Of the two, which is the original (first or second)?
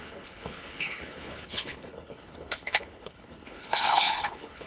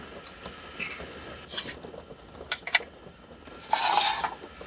second